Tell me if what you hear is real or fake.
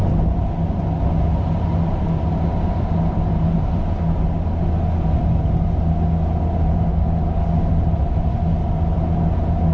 real